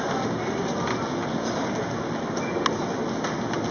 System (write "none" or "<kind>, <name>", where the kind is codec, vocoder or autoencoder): none